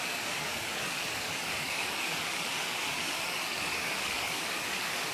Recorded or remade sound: remade